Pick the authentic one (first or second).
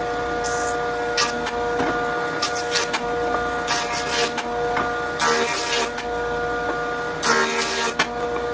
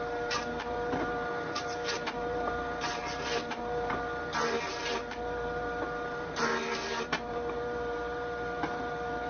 first